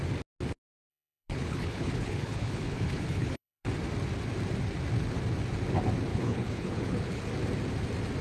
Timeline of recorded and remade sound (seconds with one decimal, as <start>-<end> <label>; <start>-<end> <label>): 0.0-0.9 recorded; 0.9-3.7 remade; 3.7-6.1 recorded; 6.1-7.2 remade; 7.2-8.2 recorded

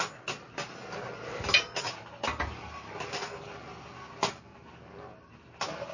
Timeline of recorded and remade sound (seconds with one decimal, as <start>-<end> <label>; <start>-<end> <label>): 0.0-5.9 recorded

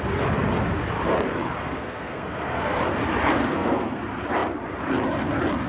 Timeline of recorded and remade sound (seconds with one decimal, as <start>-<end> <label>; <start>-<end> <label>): 0.0-1.6 recorded; 1.6-2.8 remade; 2.8-3.4 recorded; 3.4-4.0 remade; 4.0-5.7 recorded

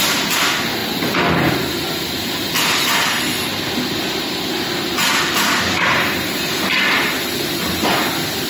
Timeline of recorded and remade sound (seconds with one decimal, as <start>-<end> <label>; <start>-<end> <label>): 0.0-8.5 recorded